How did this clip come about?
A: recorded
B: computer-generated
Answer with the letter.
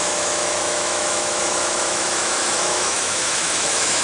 B